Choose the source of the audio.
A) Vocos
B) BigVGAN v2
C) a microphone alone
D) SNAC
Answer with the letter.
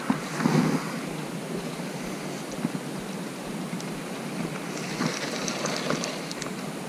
C